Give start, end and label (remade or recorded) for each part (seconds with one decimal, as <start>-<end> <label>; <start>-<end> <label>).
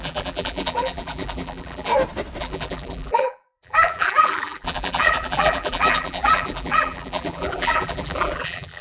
0.0-1.9 remade; 1.9-2.4 recorded; 2.4-8.8 remade